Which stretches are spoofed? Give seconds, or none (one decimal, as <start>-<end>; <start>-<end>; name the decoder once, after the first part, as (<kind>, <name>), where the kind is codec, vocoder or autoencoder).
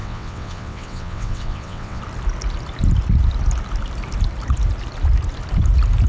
0.0-2.0 (vocoder, WaveNeXt)